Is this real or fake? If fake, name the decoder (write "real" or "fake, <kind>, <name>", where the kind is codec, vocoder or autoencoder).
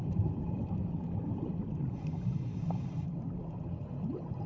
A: real